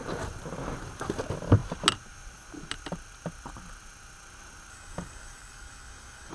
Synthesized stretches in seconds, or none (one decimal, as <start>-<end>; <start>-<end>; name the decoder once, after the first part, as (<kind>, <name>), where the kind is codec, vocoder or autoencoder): 4.7-6.3 (codec, DAC)